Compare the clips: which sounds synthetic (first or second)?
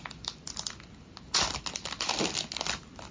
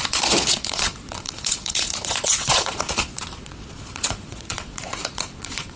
second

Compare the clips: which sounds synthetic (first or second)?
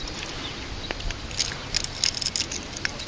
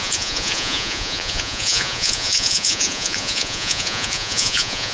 second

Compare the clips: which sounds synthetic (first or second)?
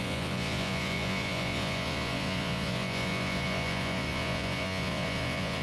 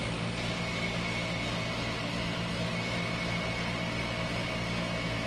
first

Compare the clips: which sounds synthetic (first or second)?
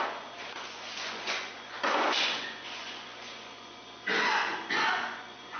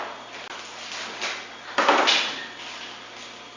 first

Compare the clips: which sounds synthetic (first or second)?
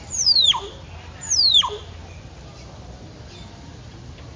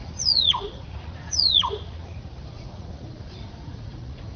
second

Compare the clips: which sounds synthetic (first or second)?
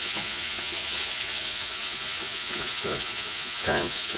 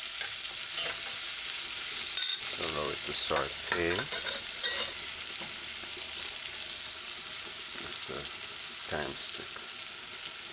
first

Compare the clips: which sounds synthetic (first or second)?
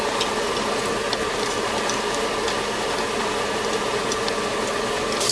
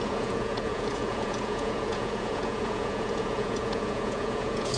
second